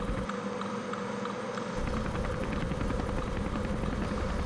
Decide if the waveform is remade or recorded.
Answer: recorded